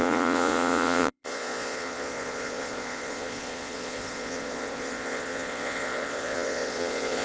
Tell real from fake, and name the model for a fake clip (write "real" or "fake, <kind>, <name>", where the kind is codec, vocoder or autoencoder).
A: fake, vocoder, Vocos